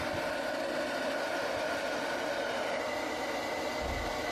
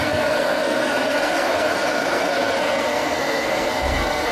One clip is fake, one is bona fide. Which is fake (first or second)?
second